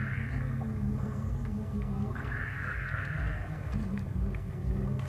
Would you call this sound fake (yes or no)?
yes